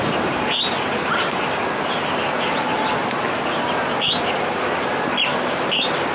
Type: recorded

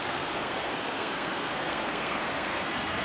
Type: remade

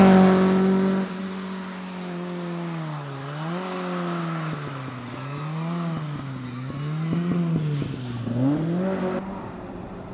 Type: recorded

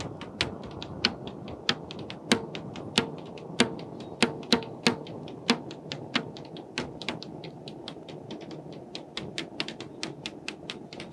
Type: recorded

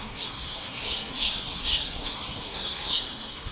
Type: remade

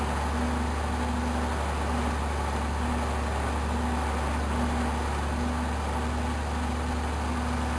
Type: recorded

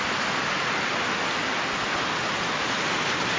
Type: recorded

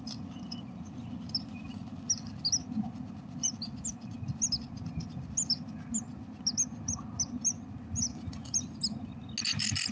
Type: recorded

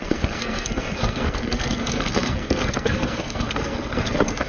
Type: remade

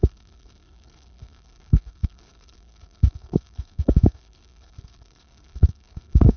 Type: remade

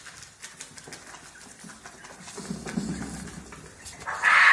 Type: recorded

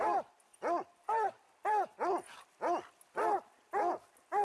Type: recorded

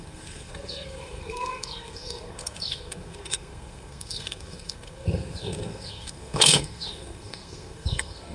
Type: remade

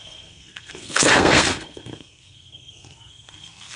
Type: remade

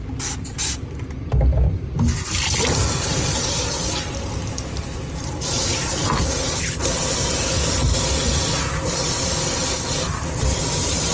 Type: recorded